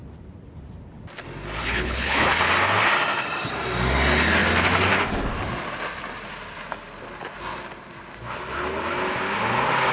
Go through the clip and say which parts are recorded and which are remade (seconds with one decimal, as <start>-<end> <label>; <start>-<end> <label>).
0.0-1.6 recorded; 1.6-2.4 remade; 2.4-9.9 recorded